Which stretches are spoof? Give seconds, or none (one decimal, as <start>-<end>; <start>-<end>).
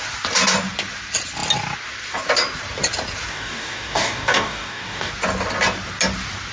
3.3-5.1